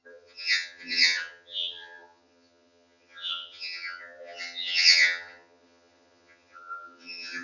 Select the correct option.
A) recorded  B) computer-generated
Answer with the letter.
B